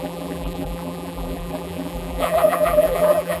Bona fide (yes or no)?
no